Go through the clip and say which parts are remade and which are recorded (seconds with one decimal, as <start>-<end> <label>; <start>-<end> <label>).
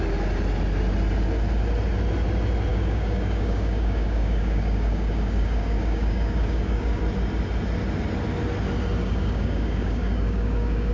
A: 0.0-2.7 recorded; 2.7-7.0 remade; 7.0-9.0 recorded; 9.0-10.9 remade